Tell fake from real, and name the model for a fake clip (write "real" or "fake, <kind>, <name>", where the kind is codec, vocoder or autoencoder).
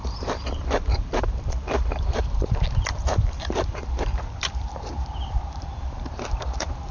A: fake, vocoder, BigVGAN v2